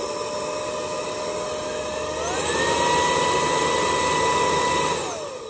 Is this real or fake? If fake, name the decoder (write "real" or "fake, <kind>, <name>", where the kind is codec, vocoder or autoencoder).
real